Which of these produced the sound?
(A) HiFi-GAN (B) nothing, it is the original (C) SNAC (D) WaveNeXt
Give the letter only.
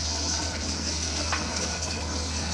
C